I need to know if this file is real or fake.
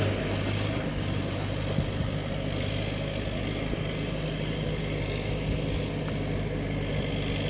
real